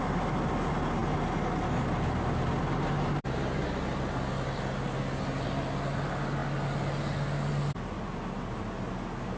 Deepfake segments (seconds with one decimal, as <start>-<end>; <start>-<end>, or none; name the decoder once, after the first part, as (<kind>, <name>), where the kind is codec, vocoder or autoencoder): none